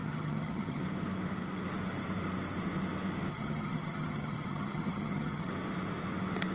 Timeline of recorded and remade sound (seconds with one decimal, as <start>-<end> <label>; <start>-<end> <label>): 0.0-0.8 remade; 0.8-3.3 recorded; 3.3-5.5 remade; 5.5-6.5 recorded